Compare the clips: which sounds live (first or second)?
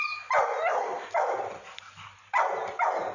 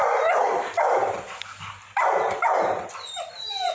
first